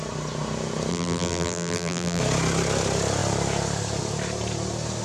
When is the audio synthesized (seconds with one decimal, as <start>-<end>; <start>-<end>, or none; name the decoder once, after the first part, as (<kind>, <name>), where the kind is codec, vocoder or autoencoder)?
0.9-2.2 (vocoder, BigVGAN v2)